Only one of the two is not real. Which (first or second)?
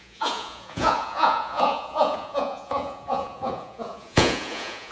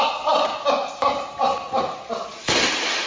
first